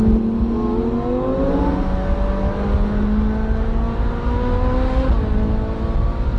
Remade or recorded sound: recorded